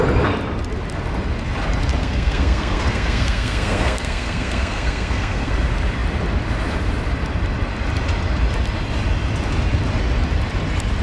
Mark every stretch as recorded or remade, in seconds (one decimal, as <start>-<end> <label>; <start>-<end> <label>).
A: 0.0-2.0 recorded; 2.0-5.5 remade; 5.5-11.0 recorded